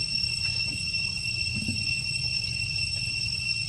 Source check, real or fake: fake